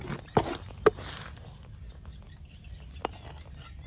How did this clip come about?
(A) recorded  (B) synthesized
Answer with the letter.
A